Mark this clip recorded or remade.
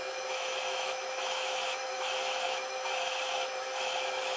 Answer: remade